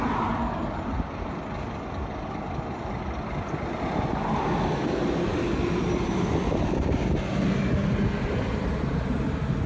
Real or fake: real